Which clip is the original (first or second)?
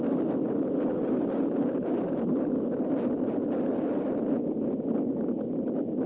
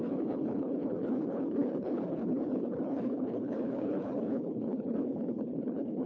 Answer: first